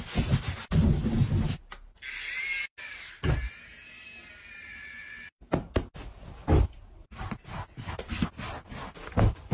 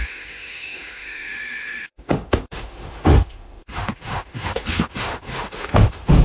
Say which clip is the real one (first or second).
first